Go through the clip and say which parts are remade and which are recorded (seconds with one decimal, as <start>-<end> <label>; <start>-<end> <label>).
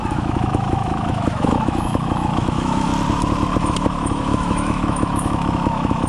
0.0-2.9 remade; 2.9-3.6 recorded; 3.6-6.1 remade